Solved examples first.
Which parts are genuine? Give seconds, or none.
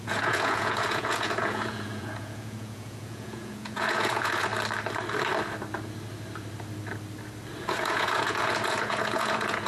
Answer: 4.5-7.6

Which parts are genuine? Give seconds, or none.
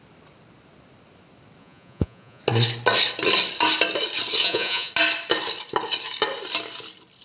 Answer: 0.0-1.6; 2.4-4.4; 4.9-7.2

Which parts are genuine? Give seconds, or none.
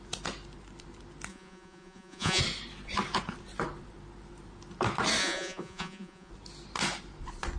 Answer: 0.0-1.3; 2.4-5.2; 6.3-7.6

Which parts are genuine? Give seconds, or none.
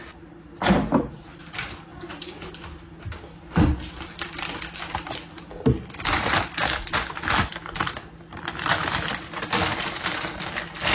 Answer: 0.0-1.9; 2.5-10.9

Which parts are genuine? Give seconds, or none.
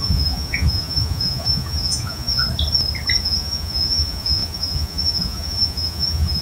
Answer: 2.4-3.2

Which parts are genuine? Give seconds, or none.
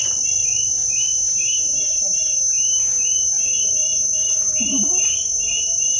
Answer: 0.0-6.0